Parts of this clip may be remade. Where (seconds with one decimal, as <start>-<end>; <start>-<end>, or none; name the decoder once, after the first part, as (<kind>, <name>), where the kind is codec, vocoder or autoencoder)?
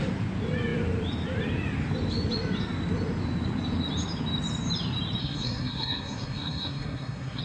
5.2-7.4 (codec, SNAC)